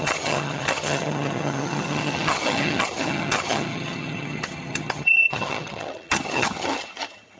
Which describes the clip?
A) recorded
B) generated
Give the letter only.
B